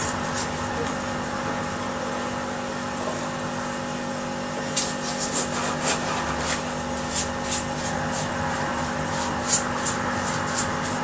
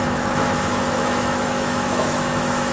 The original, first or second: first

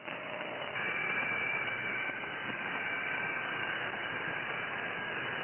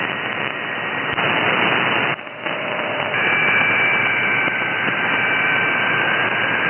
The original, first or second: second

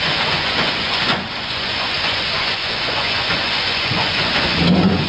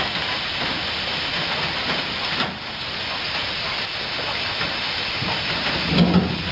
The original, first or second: second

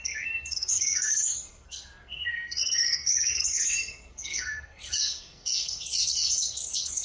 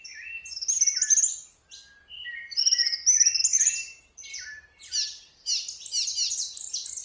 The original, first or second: second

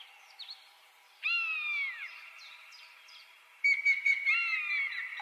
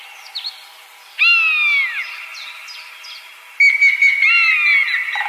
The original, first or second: second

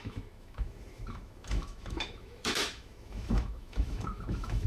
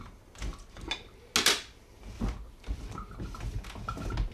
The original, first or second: second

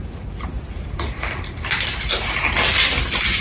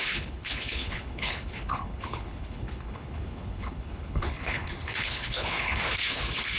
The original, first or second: first